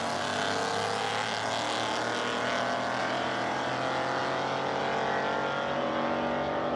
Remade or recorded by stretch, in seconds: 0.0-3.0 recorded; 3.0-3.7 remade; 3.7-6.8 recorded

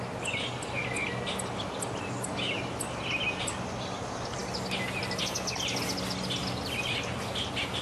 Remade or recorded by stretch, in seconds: 0.0-6.4 recorded; 6.4-7.2 remade; 7.2-7.8 recorded

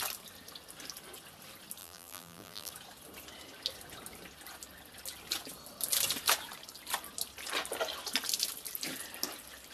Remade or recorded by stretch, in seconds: 0.0-1.8 recorded; 1.8-2.7 remade; 2.7-9.7 recorded